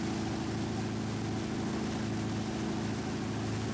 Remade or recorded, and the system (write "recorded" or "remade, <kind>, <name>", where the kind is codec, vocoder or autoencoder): recorded